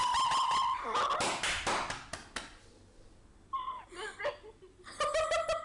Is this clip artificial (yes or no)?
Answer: no